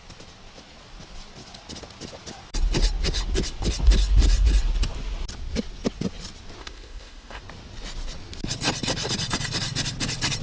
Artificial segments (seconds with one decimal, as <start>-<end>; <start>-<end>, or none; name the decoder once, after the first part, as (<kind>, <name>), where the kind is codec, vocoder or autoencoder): 6.6-7.4 (codec, ZipCodec)